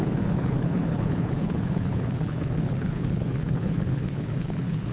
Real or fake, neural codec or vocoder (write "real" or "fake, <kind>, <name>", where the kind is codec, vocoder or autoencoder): fake, codec, HILCodec